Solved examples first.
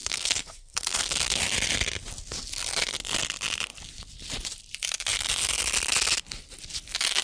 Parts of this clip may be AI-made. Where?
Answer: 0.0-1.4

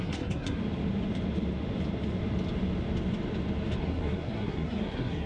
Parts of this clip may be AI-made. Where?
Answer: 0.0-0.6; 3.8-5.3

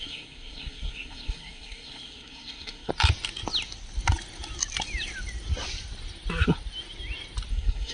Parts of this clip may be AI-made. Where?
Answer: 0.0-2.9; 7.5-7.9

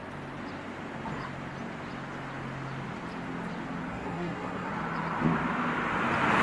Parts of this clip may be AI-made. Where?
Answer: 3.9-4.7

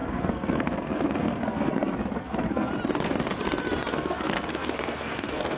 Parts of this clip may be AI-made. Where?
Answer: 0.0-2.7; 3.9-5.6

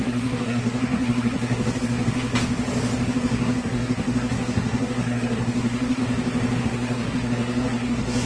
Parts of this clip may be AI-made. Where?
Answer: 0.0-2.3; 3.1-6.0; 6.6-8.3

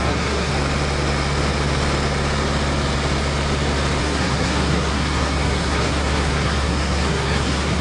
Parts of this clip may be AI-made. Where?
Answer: 0.0-0.5; 4.0-7.8